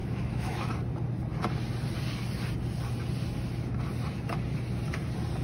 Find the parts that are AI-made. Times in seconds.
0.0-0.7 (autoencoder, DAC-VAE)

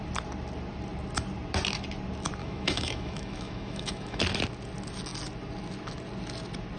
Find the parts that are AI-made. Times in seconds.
2.4-4.2 (autoencoder, DAC-VAE)

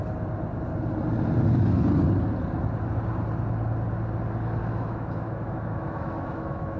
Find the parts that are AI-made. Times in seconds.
4.6-6.8 (autoencoder, DAC-VAE)